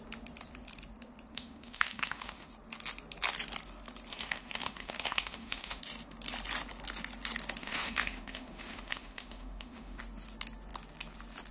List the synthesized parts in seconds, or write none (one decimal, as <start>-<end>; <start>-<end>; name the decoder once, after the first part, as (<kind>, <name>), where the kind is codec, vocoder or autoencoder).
1.3-2.5 (autoencoder, DAC-VAE); 4.1-5.8; 7.6-10.0